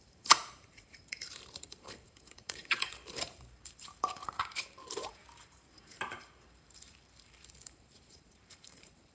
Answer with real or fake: fake